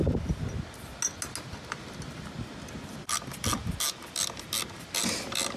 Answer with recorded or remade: recorded